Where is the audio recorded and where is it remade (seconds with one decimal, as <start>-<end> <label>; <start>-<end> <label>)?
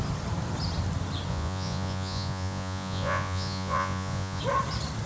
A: 0.0-1.3 recorded; 1.3-4.4 remade; 4.4-5.1 recorded